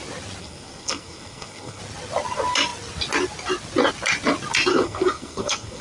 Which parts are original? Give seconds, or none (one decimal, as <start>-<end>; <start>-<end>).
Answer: 0.0-0.4; 1.8-4.7